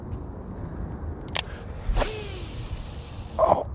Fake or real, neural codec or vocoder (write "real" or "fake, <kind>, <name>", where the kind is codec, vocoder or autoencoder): real